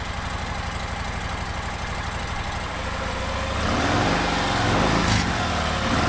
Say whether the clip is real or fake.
real